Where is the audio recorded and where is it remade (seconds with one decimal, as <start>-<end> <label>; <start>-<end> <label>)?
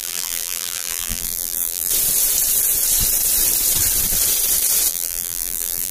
0.0-1.9 remade; 1.9-4.9 recorded; 4.9-5.9 remade